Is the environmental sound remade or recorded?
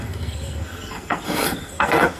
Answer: remade